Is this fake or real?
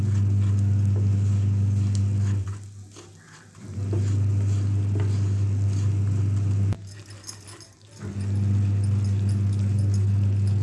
real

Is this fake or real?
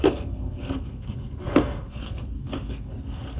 fake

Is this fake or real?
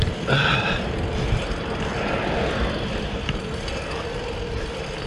real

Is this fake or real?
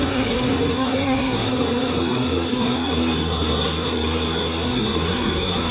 fake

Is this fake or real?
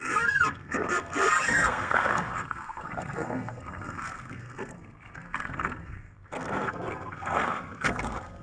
fake